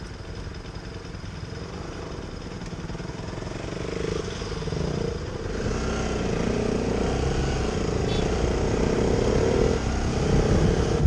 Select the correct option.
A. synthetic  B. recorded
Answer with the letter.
B